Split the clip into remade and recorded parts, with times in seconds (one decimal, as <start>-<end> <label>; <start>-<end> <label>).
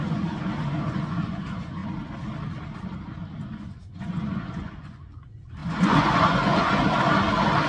0.0-1.8 remade; 1.8-3.6 recorded; 3.6-6.8 remade; 6.8-7.7 recorded